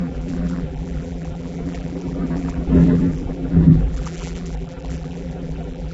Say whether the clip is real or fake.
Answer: fake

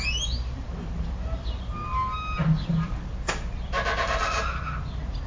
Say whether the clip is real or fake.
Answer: real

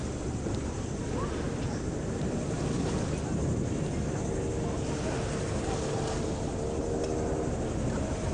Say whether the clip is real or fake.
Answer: real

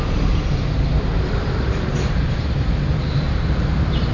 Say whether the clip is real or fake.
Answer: fake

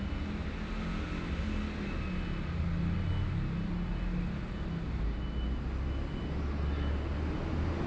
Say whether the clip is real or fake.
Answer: real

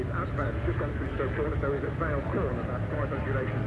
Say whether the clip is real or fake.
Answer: fake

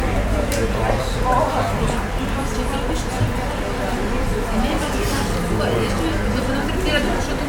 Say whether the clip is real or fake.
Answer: real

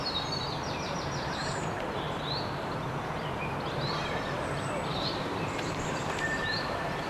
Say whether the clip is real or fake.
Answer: fake